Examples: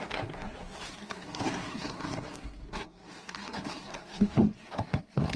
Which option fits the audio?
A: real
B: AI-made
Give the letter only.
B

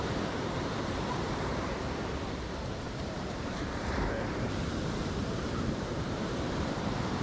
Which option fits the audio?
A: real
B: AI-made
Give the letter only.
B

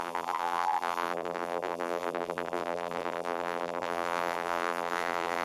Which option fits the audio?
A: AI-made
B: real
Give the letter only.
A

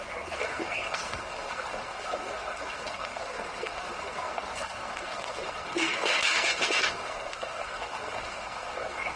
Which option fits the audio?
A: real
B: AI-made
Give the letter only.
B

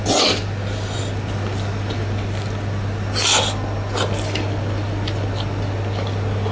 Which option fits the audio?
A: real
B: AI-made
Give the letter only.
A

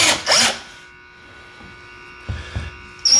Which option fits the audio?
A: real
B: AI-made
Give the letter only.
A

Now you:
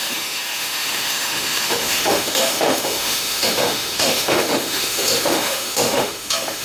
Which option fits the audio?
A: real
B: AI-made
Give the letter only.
B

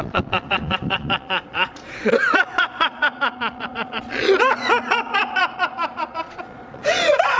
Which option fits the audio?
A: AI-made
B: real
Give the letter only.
A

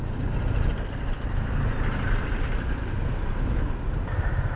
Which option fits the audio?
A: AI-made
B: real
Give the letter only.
B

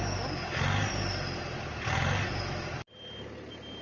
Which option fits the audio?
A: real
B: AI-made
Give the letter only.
A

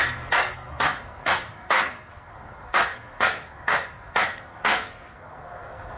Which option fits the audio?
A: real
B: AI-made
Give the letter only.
B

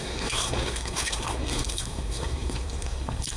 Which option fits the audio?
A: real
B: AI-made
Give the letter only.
B